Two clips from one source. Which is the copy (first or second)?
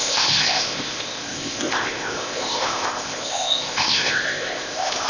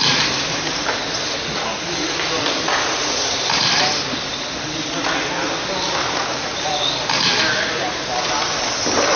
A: first